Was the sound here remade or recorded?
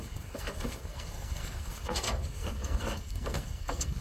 remade